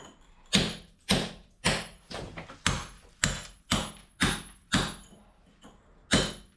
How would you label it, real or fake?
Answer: real